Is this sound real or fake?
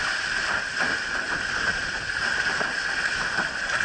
real